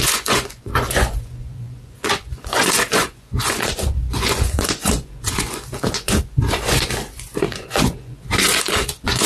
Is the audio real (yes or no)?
no